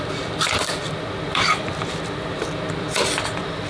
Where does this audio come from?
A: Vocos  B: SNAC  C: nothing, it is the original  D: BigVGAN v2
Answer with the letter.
D